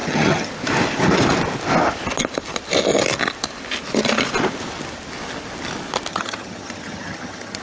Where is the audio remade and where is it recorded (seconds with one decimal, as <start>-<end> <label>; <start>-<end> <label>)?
0.0-0.5 remade; 0.5-6.1 recorded; 6.1-7.6 remade